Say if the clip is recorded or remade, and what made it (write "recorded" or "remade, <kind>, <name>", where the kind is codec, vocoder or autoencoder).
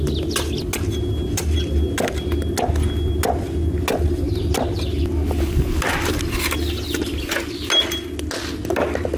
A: recorded